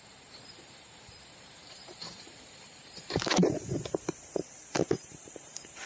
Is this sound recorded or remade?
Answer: remade